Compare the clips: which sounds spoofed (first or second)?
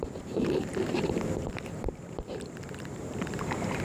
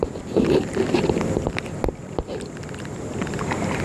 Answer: first